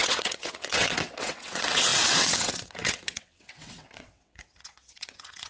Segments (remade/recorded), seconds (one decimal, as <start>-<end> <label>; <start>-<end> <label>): 0.0-5.5 remade